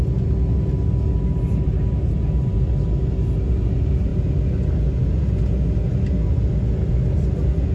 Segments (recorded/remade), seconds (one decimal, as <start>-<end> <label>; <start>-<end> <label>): 0.0-7.7 recorded